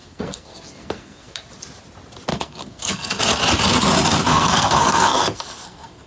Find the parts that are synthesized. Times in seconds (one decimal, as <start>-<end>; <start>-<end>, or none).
0.0-1.5; 2.3-3.2; 4.3-6.1